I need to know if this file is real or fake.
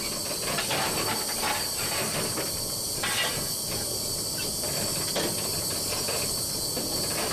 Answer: real